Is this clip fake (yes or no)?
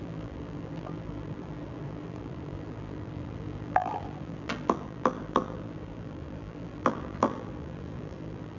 yes